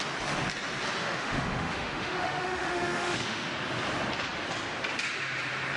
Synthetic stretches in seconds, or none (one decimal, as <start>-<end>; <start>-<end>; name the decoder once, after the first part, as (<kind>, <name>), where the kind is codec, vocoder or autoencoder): 1.0-3.5 (autoencoder, DAC-VAE)